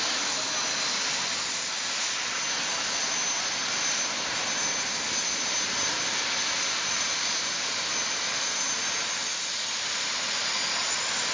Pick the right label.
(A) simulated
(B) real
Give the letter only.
B